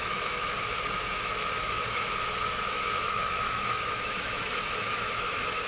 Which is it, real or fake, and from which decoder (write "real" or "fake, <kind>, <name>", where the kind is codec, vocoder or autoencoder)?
fake, autoencoder, DAC-VAE